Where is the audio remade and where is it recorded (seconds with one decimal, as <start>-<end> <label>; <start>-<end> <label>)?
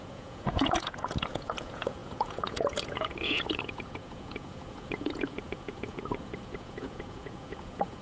0.0-8.0 remade